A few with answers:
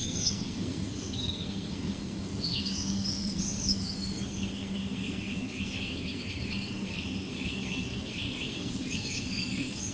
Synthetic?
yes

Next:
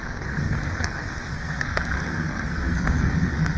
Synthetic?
yes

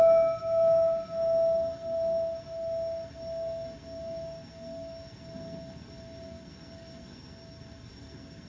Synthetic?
yes